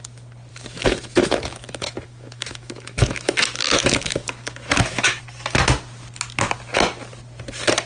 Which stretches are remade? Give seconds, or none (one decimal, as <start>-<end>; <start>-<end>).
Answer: 0.5-5.2